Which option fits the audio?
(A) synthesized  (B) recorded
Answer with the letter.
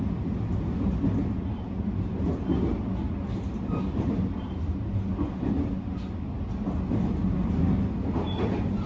B